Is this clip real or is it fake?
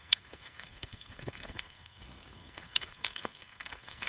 fake